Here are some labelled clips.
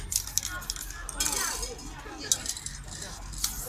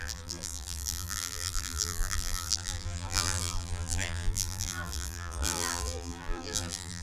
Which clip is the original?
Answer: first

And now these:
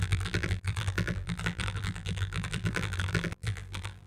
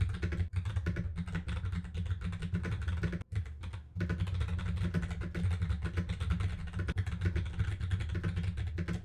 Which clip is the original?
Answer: second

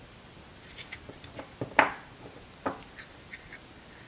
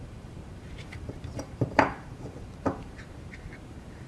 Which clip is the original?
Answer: first